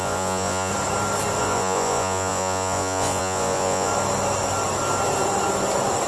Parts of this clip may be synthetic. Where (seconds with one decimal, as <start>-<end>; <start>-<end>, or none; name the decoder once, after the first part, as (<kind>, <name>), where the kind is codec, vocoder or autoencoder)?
0.0-0.7 (vocoder, Vocos); 1.4-3.9